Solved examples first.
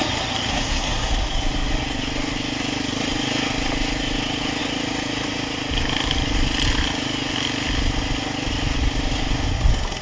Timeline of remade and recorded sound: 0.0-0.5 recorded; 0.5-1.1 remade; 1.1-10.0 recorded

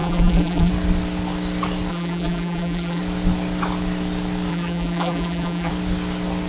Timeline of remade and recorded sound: 0.0-0.7 remade; 0.7-1.9 recorded; 1.9-3.0 remade; 3.0-4.5 recorded; 4.5-5.7 remade; 5.7-6.5 recorded